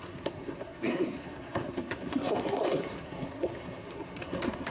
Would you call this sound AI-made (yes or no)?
yes